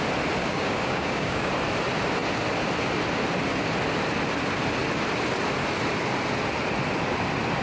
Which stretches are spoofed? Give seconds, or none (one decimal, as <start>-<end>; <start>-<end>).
0.4-1.5